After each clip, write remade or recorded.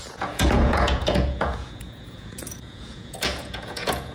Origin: remade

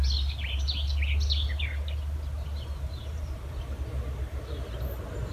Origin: recorded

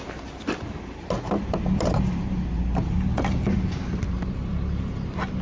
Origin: recorded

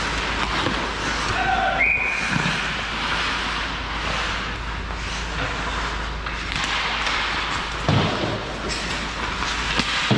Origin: recorded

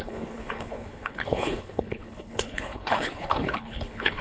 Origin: remade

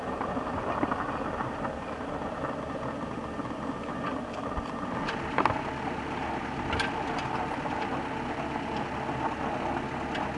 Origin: recorded